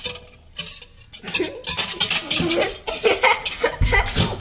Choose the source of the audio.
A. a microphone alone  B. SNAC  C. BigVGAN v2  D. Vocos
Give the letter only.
A